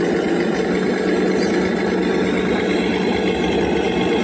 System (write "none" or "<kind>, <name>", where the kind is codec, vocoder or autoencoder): none